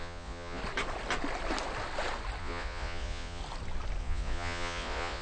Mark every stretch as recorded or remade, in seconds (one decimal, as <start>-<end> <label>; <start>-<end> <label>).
0.0-0.6 remade; 0.6-2.4 recorded; 2.4-3.4 remade; 3.4-4.0 recorded; 4.0-5.2 remade